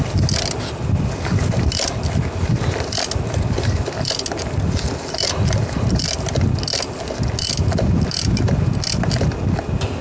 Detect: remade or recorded recorded